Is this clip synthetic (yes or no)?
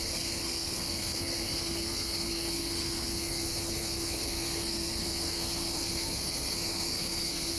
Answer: yes